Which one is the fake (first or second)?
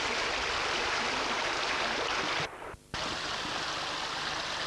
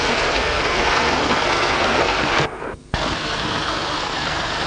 second